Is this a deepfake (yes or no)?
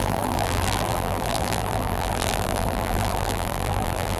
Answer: yes